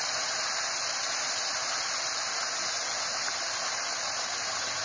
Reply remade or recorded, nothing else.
remade